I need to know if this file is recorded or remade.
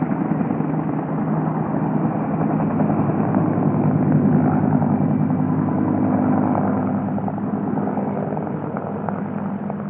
recorded